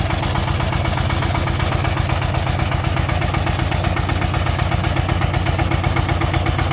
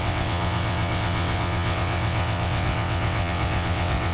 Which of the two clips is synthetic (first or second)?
second